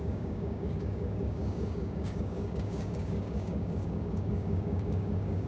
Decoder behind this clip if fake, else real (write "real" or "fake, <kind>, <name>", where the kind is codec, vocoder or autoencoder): fake, codec, DAC